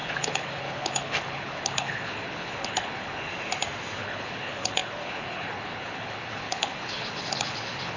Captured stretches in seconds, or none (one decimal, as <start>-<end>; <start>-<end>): 3.3-4.0